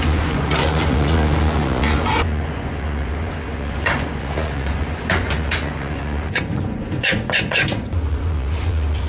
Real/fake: fake